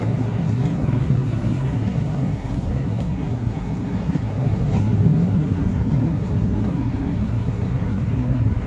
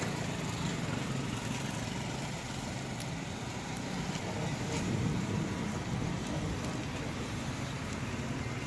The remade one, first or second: first